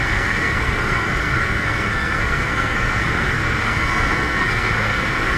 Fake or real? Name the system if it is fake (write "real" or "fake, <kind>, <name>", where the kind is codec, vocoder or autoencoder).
fake, codec, SNAC